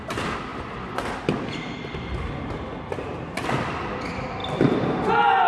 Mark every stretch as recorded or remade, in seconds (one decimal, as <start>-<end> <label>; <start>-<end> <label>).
0.0-5.5 recorded